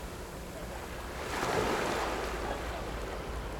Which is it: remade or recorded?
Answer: recorded